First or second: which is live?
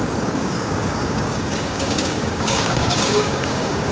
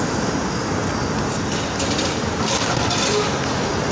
second